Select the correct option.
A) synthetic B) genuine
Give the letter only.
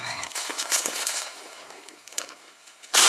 A